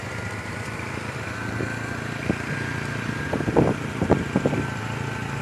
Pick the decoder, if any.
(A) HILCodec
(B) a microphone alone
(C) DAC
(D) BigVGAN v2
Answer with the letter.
B